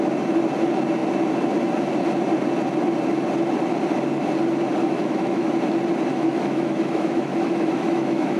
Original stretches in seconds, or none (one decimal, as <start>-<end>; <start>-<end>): 0.0-4.8; 5.5-6.1

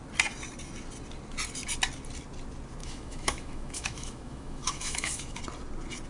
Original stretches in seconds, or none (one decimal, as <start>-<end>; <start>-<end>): 0.0-2.8; 5.4-6.1